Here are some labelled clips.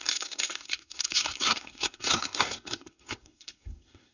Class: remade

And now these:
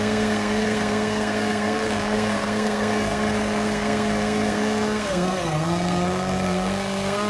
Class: remade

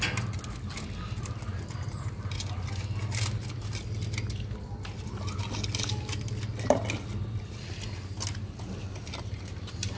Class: recorded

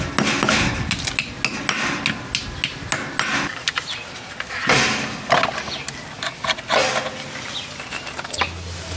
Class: recorded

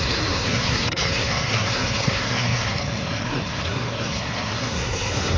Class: remade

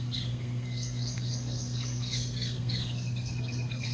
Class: remade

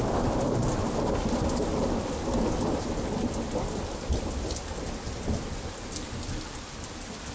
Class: recorded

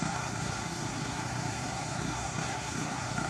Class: remade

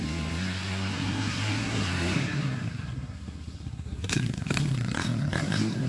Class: remade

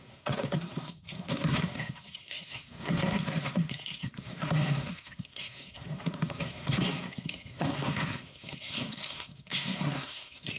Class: remade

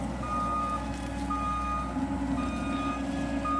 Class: recorded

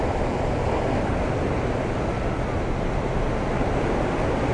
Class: recorded